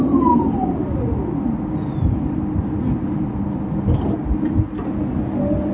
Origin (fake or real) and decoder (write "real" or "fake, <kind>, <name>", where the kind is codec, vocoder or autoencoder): real